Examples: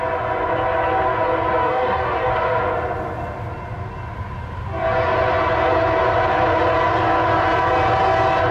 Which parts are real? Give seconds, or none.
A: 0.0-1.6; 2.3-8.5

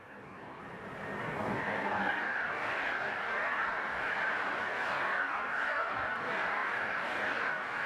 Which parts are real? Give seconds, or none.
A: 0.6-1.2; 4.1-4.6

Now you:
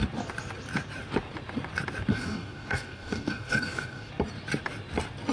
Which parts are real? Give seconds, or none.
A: 0.0-2.1; 4.1-5.3

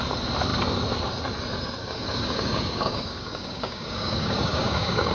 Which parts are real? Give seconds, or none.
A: 0.0-1.8